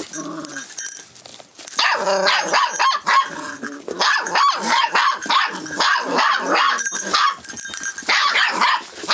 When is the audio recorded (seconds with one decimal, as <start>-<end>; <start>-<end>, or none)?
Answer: 0.0-9.1